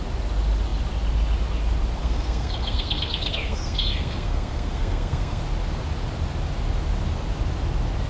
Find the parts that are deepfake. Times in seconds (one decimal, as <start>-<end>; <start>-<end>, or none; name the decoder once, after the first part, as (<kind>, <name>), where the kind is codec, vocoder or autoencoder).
2.0-5.4 (codec, SNAC)